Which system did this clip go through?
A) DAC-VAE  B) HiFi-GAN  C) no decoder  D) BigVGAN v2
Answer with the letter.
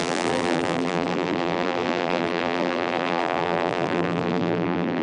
D